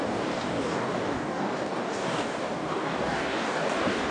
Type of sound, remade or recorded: remade